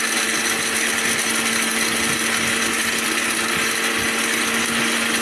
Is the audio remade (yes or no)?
no